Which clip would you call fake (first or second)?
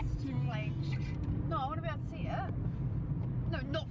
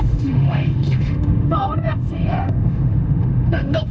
second